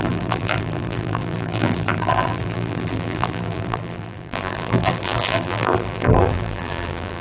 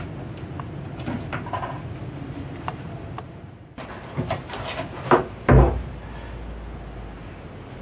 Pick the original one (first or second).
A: second